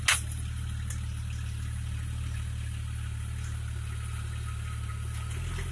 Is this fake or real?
real